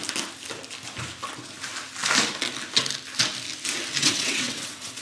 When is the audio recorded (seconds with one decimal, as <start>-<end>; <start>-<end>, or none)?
0.0-4.0